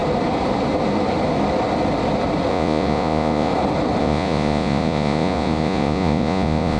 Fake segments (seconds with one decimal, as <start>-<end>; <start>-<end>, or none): 2.5-3.5; 4.0-6.8